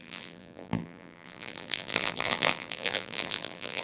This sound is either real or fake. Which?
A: fake